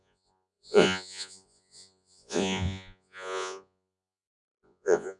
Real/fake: fake